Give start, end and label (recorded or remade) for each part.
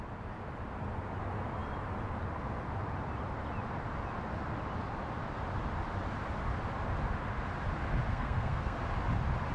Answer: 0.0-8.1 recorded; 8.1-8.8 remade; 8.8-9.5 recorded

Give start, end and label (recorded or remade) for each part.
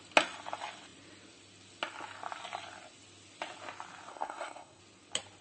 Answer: 0.0-4.1 recorded; 4.1-4.8 remade; 4.8-5.4 recorded